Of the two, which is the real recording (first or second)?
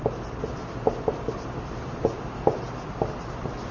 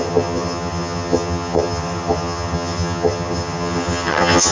first